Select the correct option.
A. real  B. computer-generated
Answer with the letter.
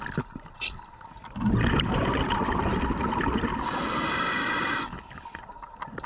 A